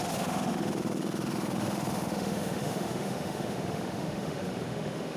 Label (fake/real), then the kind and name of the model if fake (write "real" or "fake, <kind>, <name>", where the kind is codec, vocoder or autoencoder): fake, autoencoder, DAC-VAE